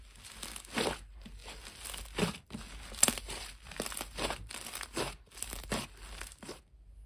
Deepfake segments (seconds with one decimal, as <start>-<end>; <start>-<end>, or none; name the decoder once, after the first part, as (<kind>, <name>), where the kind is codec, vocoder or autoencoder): none